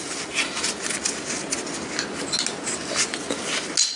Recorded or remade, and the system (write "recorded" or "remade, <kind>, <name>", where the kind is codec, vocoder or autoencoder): recorded